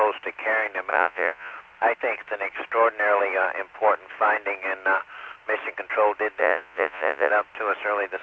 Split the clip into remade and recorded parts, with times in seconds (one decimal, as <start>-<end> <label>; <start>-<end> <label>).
0.0-0.9 recorded; 0.9-1.5 remade; 1.5-6.4 recorded; 6.4-7.3 remade; 7.3-8.2 recorded